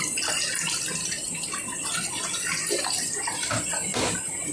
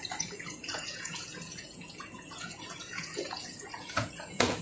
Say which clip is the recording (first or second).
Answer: first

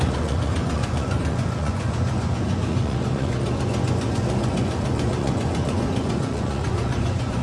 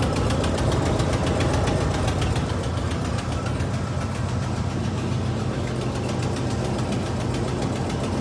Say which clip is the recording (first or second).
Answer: second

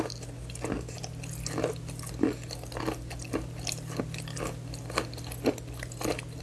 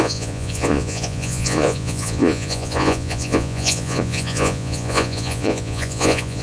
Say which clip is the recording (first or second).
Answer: first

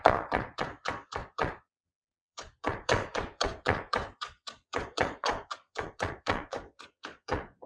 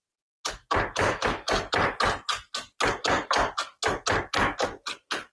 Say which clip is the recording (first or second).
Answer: second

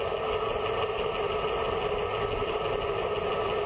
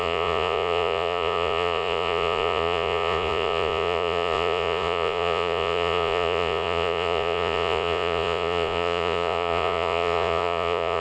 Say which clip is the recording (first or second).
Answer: first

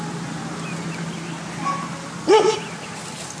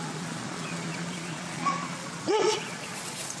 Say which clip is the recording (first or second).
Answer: first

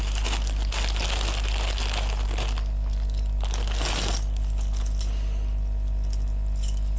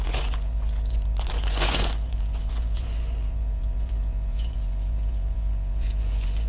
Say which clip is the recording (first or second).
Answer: first